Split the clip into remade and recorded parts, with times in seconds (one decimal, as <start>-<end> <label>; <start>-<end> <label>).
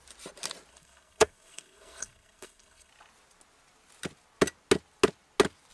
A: 0.0-0.7 recorded; 0.7-2.9 remade; 2.9-5.7 recorded